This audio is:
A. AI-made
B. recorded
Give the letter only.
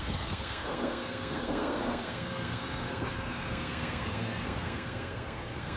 A